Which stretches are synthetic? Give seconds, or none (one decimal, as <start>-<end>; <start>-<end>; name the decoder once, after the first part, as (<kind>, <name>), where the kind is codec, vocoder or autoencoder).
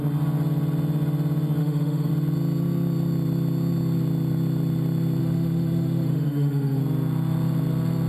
1.6-2.1 (autoencoder, DAC-VAE); 5.2-6.8